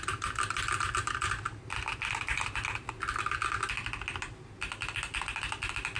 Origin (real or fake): real